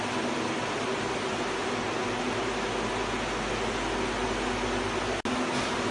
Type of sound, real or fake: real